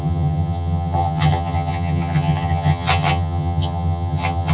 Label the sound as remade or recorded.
remade